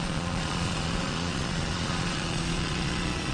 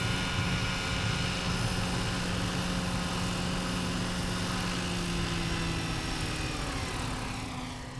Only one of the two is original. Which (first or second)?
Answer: second